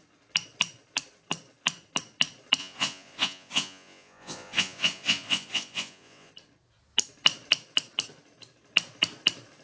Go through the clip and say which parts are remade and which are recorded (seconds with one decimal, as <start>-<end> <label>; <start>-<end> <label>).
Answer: 0.0-2.6 recorded; 2.6-6.3 remade; 6.3-9.6 recorded